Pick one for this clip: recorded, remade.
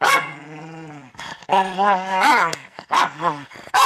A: remade